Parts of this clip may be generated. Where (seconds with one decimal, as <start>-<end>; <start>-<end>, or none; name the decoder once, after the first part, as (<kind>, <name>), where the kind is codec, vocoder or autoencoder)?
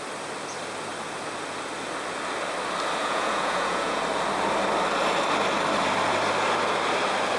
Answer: 3.0-4.0 (vocoder, Vocos)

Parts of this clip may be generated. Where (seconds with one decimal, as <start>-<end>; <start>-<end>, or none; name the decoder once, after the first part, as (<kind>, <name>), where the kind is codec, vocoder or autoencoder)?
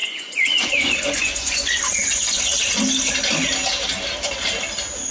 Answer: 0.0-2.4 (vocoder, Vocos)